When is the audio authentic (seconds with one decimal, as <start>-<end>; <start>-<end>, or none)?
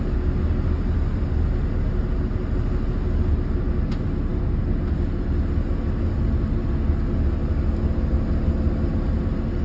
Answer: 0.0-9.6